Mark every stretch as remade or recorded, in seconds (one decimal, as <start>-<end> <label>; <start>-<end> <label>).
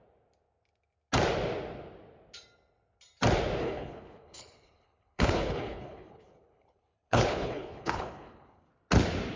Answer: 0.0-3.6 recorded; 3.6-8.7 remade; 8.7-9.4 recorded